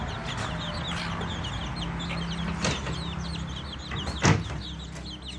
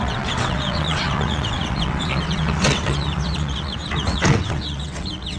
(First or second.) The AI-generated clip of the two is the second